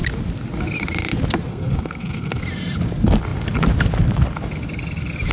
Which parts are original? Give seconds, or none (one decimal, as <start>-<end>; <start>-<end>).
0.0-1.5; 2.4-5.3